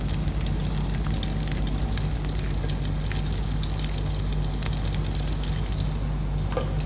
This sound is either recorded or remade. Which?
recorded